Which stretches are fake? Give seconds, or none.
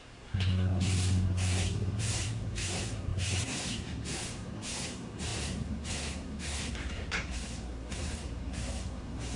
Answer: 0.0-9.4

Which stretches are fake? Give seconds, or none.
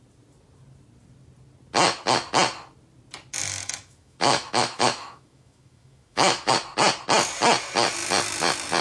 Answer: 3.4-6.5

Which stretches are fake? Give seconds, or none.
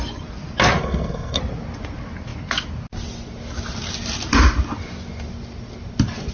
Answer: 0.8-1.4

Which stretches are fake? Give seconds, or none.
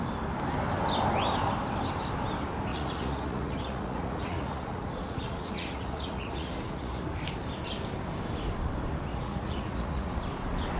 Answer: 2.7-7.0; 9.1-10.2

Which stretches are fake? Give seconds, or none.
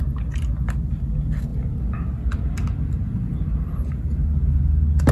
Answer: none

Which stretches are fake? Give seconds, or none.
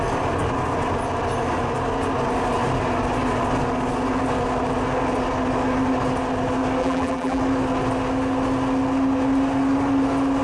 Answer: 6.8-7.4